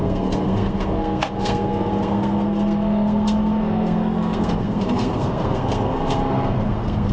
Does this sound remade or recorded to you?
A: remade